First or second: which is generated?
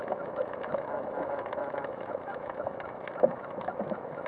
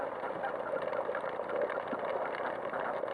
first